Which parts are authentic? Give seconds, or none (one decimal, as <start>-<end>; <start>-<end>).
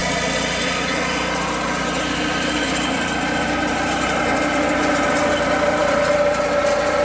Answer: 0.0-7.0